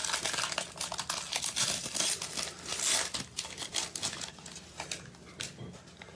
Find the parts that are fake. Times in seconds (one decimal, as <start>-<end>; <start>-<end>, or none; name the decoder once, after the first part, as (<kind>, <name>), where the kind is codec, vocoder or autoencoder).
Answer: none